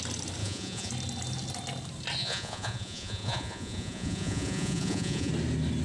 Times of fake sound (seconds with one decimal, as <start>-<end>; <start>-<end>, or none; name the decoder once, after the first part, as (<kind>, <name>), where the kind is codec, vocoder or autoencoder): 0.4-0.9 (vocoder, Vocos); 2.2-5.3